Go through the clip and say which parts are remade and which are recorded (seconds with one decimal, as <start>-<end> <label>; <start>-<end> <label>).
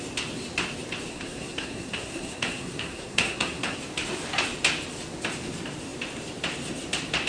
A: 0.0-1.1 recorded; 1.1-3.8 remade; 3.8-7.3 recorded